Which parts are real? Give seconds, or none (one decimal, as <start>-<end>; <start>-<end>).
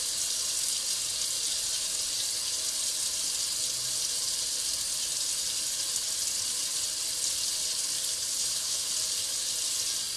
0.0-8.4; 8.9-10.2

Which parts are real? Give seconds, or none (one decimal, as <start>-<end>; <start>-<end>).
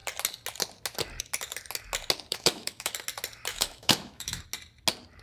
0.0-2.3; 2.9-3.5; 4.4-5.2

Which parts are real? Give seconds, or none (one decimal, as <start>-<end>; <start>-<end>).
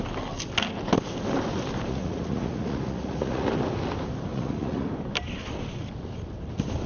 0.0-1.9; 3.5-4.3; 4.9-6.9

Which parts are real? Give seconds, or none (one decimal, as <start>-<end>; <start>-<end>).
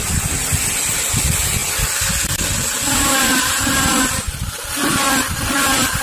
0.0-6.0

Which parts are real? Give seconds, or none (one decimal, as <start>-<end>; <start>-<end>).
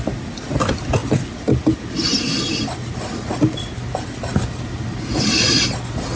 0.0-6.2